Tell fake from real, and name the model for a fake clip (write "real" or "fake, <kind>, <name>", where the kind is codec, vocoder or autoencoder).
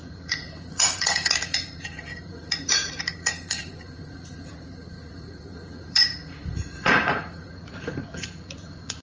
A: fake, vocoder, Vocos